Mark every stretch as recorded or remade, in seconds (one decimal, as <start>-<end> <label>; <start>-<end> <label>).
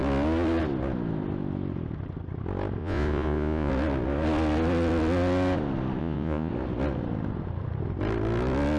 0.0-2.8 recorded; 2.8-3.7 remade; 3.7-6.0 recorded; 6.0-6.5 remade; 6.5-8.8 recorded